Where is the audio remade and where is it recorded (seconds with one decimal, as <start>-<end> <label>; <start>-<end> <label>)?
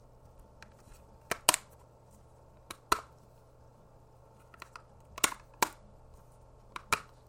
0.0-7.3 recorded